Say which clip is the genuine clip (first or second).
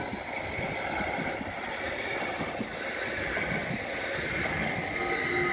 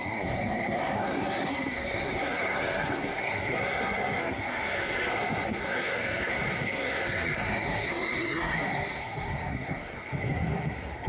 first